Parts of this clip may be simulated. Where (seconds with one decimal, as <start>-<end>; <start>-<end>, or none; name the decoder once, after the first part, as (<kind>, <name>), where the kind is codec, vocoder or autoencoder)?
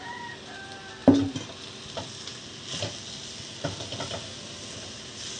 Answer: none